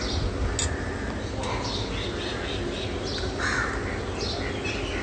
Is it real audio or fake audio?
real